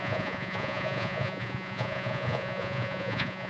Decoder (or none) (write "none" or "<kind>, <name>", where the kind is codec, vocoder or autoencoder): vocoder, Vocos